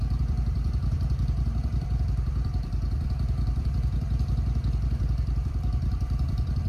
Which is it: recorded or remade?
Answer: remade